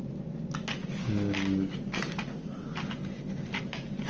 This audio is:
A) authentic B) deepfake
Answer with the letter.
A